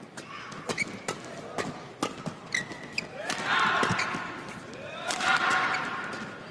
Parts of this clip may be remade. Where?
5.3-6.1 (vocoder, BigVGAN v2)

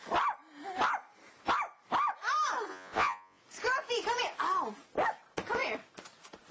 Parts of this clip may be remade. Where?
2.7-3.4 (vocoder, Vocos)

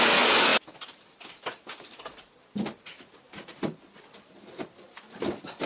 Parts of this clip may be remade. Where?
none

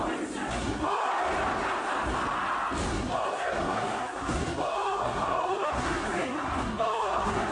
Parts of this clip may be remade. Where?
0.5-1.1 (codec, SNAC); 2.9-7.5

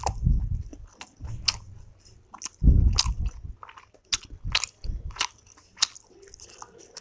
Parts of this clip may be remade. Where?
none

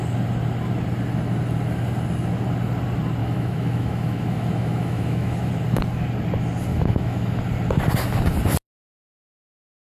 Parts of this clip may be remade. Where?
3.2-5.5 (autoencoder, DAC-VAE); 6.7-7.4

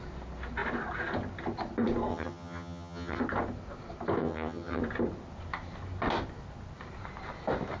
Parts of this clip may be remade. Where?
2.1-3.2 (vocoder, HiFi-GAN); 4.2-4.8

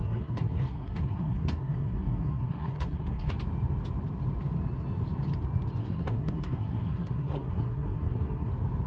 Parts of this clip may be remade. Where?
0.0-3.3 (codec, SNAC); 5.8-8.5